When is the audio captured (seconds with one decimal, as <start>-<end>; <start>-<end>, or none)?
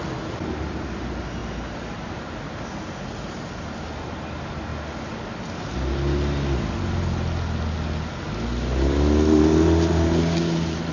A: 0.0-10.9